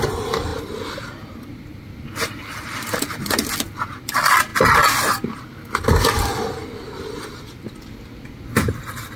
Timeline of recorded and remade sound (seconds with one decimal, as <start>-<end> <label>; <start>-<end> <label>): 0.0-9.2 recorded